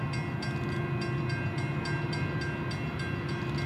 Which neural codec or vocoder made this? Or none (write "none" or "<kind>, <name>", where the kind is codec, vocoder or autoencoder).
none